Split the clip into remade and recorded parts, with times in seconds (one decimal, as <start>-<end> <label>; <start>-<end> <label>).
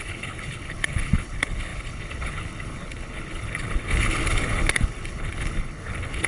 0.0-6.3 remade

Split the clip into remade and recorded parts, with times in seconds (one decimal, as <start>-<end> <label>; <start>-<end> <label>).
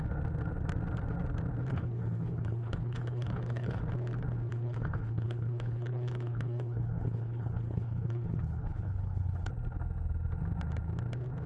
0.0-1.7 recorded; 1.7-3.8 remade; 3.8-4.5 recorded; 4.5-9.5 remade; 9.5-11.5 recorded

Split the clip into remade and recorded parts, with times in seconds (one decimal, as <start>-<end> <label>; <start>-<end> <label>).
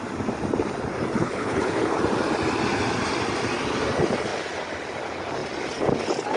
0.0-1.2 recorded; 1.2-2.0 remade; 2.0-6.4 recorded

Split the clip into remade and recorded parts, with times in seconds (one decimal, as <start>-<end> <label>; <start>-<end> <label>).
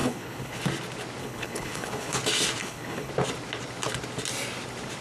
0.0-0.6 remade; 0.6-1.2 recorded; 1.2-2.2 remade; 2.2-2.6 recorded; 2.6-3.1 remade; 3.1-5.0 recorded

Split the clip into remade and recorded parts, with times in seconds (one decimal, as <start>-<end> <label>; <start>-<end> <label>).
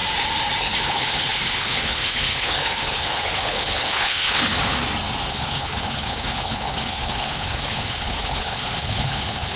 0.0-0.6 recorded; 0.6-4.8 remade; 4.8-5.3 recorded; 5.3-9.6 remade